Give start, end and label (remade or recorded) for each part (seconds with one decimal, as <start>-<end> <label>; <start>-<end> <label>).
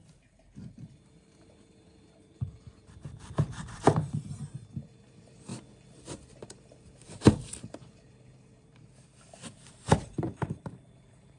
0.0-5.5 remade; 5.5-6.4 recorded; 6.4-11.4 remade